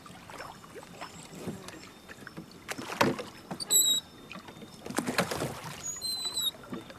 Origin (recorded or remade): recorded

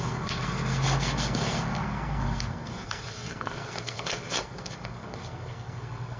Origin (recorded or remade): remade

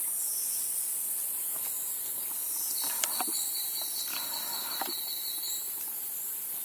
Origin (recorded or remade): recorded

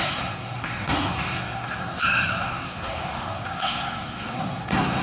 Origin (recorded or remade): remade